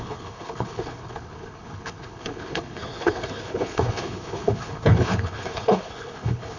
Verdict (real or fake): fake